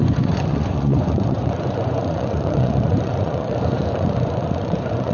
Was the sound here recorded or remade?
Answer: remade